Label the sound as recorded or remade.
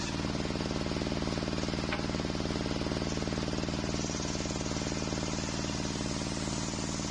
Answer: recorded